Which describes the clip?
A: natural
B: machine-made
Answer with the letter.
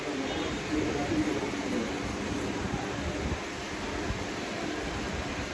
A